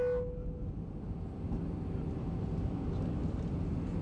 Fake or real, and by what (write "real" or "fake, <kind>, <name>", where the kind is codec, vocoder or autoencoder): real